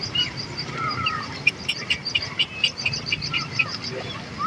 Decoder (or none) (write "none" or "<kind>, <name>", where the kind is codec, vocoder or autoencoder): vocoder, BigVGAN v2